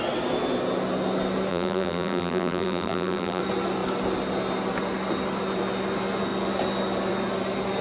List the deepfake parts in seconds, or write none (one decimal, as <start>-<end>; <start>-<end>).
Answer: 1.5-3.4